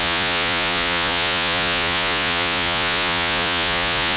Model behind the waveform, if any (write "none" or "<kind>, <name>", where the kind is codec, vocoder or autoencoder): vocoder, Vocos